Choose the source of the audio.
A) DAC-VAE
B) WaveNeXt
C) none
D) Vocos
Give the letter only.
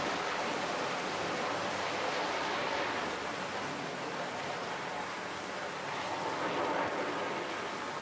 C